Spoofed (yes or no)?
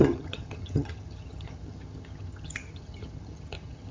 yes